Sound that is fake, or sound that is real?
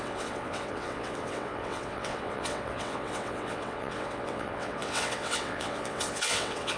fake